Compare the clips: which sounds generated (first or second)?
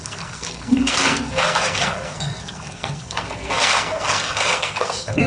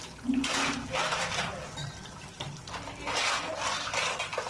first